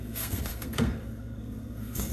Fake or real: fake